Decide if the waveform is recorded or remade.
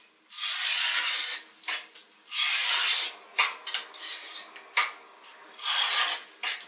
recorded